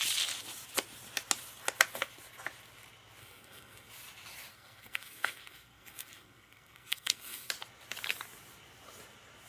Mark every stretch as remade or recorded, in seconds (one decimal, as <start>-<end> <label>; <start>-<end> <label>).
0.0-3.2 recorded; 3.2-3.9 remade; 3.9-4.5 recorded; 4.5-7.5 remade; 7.5-9.5 recorded